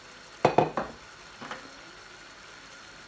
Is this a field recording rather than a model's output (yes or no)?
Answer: yes